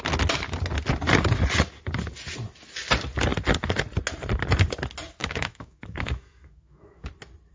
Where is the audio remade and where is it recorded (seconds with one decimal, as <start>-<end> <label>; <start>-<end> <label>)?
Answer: 0.0-5.2 recorded; 5.2-7.1 remade; 7.1-7.5 recorded